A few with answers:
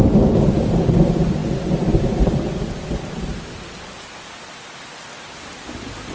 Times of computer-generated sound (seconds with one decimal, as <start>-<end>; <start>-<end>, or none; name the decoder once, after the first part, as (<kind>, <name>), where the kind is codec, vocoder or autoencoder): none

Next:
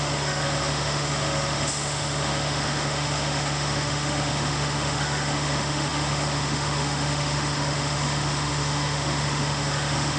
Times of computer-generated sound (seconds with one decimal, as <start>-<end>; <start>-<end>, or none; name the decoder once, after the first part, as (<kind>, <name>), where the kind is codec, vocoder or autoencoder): 0.0-10.2 (autoencoder, DAC-VAE)

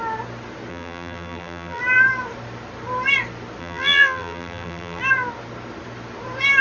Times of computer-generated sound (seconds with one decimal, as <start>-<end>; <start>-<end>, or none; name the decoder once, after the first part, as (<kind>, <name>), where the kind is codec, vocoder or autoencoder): 0.7-1.8 (vocoder, BigVGAN v2); 3.6-5.0

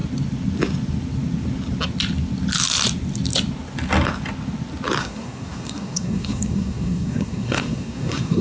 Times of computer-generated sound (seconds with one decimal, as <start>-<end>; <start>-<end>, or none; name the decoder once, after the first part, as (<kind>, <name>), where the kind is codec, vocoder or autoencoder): 5.0-8.4 (codec, SNAC)

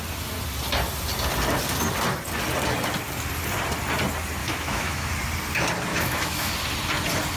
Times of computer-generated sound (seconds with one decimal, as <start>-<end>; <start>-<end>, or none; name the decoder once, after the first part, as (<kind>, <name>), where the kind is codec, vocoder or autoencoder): 4.4-5.1 (autoencoder, DAC-VAE); 5.9-6.5

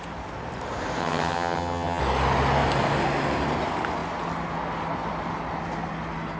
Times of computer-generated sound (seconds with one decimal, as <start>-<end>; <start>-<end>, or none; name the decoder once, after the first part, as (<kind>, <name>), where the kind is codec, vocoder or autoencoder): 1.0-2.0 (vocoder, HiFi-GAN)